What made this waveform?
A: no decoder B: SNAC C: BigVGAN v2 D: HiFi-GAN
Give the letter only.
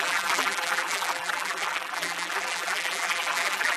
C